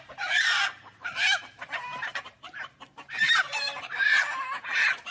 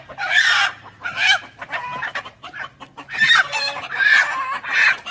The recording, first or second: second